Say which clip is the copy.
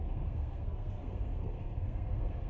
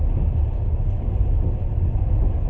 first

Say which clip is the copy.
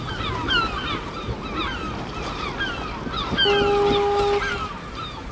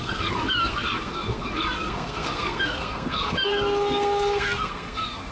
second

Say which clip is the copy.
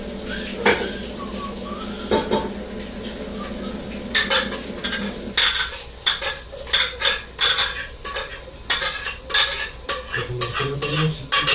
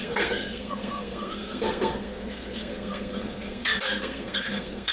second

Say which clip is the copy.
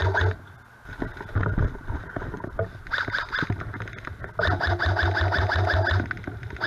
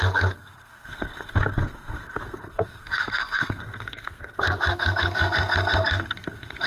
second